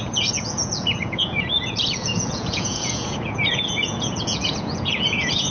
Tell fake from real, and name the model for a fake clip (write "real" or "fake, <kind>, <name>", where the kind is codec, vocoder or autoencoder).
fake, vocoder, Vocos